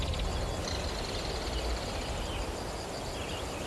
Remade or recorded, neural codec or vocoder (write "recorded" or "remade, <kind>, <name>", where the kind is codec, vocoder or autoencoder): recorded